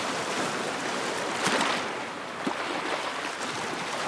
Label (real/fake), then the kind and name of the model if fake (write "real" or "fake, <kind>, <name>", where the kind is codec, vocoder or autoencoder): real